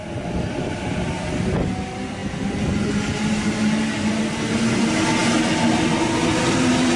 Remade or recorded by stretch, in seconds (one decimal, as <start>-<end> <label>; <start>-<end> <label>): 0.0-7.0 recorded